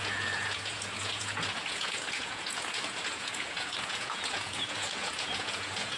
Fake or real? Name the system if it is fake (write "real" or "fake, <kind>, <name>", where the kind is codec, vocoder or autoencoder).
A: fake, vocoder, Vocos